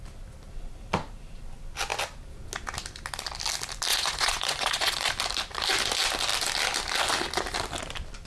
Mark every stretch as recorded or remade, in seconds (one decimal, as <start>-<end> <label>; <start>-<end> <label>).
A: 0.0-3.9 recorded; 3.9-5.1 remade; 5.1-8.3 recorded